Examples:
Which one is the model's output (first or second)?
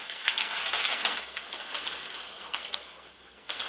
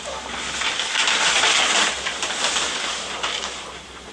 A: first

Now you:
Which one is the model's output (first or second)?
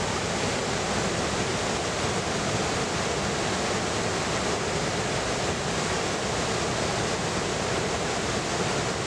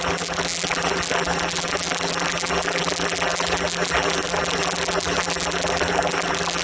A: second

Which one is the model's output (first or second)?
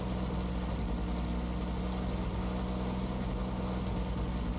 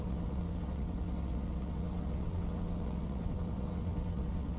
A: second